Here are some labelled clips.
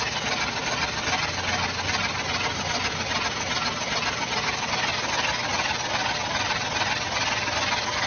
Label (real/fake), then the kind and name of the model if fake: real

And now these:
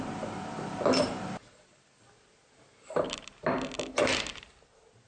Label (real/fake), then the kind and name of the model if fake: real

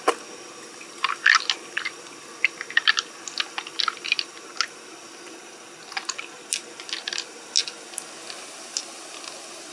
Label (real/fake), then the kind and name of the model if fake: real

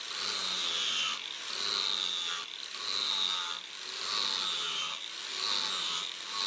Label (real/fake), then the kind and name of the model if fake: real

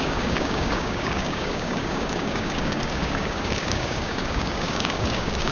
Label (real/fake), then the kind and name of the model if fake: fake, codec, DAC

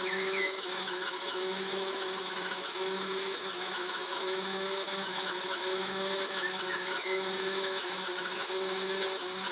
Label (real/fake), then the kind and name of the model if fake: fake, autoencoder, DAC-VAE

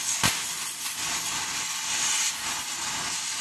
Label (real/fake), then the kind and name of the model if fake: real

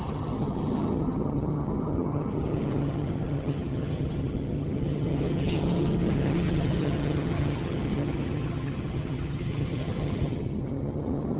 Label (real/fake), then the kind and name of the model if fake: fake, vocoder, HiFi-GAN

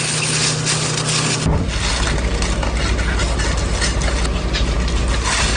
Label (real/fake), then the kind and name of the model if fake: real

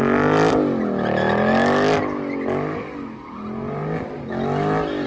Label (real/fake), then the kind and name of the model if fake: real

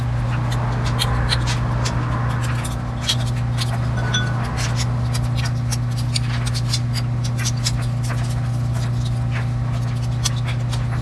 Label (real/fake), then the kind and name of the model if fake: real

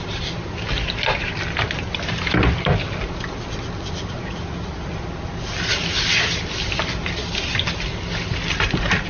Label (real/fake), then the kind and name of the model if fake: real